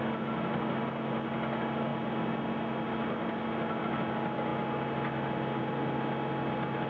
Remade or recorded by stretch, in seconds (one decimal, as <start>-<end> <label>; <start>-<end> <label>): 0.0-6.9 recorded